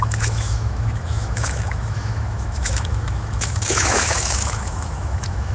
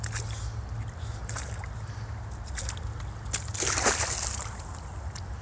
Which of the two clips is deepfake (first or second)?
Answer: first